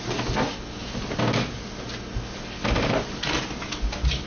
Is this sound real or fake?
real